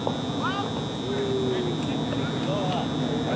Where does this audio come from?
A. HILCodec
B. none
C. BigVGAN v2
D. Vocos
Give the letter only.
B